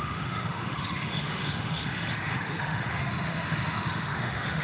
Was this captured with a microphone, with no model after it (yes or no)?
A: no